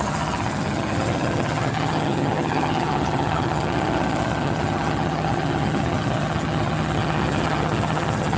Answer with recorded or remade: remade